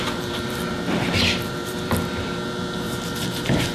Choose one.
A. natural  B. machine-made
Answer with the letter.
B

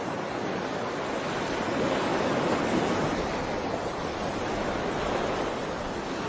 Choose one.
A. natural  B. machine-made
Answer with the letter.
A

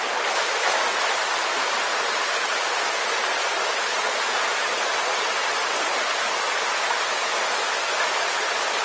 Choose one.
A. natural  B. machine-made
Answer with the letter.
A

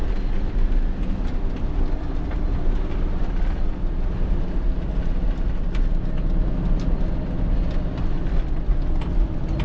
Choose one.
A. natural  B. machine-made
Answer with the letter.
A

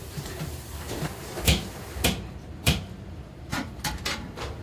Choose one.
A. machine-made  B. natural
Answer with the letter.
A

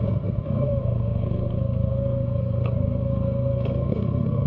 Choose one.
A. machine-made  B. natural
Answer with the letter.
A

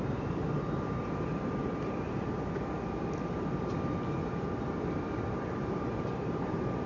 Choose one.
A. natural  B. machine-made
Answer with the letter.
B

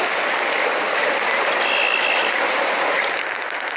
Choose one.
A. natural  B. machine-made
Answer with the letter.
A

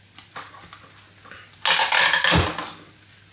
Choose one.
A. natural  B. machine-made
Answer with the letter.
A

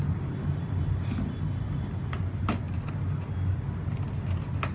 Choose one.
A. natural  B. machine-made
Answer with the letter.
A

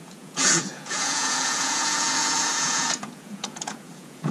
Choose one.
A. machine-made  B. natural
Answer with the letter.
A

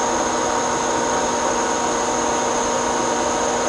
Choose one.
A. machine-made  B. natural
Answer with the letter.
B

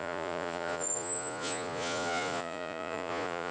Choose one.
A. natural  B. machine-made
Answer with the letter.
B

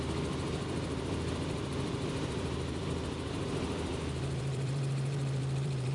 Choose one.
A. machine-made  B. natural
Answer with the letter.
A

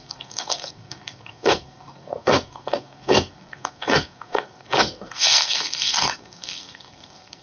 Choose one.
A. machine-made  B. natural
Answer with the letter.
A